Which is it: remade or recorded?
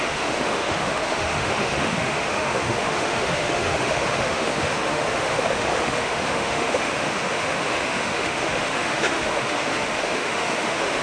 remade